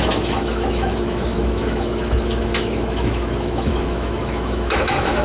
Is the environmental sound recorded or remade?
remade